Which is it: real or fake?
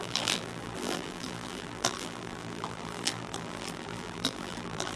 fake